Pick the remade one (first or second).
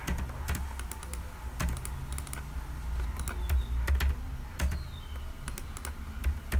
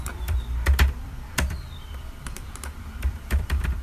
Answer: second